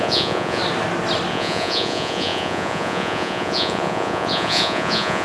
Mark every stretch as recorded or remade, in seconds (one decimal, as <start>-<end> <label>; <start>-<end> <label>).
0.0-0.6 remade; 0.6-1.3 recorded; 1.3-5.2 remade